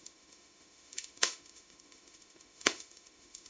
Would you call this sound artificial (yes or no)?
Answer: yes